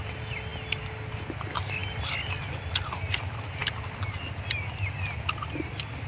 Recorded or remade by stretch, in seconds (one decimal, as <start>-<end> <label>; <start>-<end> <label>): 0.0-6.1 recorded